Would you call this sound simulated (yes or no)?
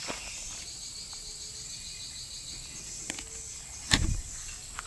no